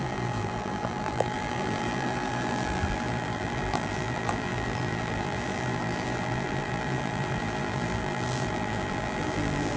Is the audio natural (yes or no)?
no